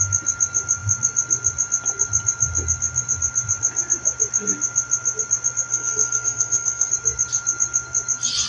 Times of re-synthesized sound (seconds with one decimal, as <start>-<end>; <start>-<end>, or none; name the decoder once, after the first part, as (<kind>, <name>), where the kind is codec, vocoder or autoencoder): 5.7-6.9 (codec, SNAC)